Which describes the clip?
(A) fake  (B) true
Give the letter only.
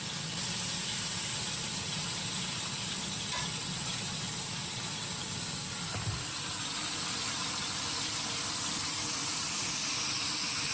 A